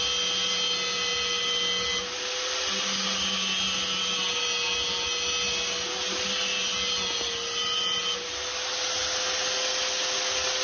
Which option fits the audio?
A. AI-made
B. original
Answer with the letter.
B